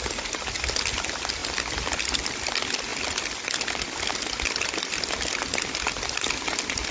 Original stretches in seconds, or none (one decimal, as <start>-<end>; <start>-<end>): 0.0-6.9